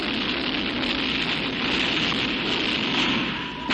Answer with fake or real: real